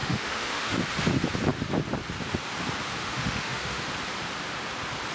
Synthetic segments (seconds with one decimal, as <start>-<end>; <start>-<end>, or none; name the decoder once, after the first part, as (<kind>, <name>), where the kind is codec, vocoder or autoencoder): 0.0-0.8 (autoencoder, DAC-VAE); 3.0-3.8